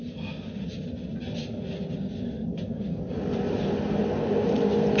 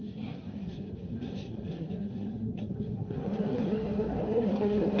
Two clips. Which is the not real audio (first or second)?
second